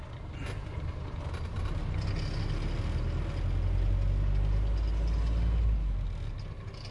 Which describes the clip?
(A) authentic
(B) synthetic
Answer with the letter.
A